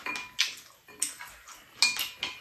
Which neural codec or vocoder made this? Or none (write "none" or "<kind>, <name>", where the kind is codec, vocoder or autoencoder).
none